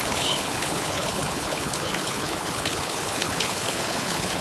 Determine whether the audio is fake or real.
fake